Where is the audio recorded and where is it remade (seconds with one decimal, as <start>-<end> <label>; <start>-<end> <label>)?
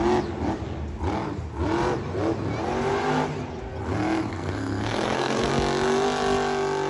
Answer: 0.0-4.3 recorded; 4.3-5.5 remade; 5.5-6.9 recorded